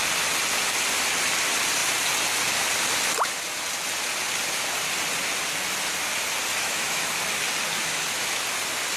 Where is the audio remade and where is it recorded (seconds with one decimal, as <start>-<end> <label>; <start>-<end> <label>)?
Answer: 0.0-6.5 recorded; 6.5-7.1 remade; 7.1-7.8 recorded; 7.8-8.4 remade; 8.4-9.0 recorded